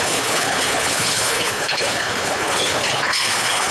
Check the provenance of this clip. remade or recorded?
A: remade